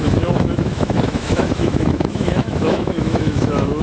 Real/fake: fake